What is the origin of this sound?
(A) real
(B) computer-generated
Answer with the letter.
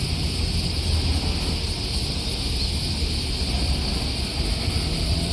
A